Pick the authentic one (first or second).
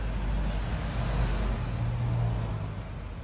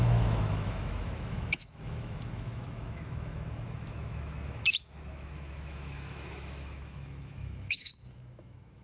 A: first